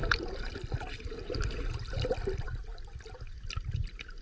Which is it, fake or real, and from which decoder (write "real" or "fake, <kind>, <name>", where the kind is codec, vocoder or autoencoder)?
real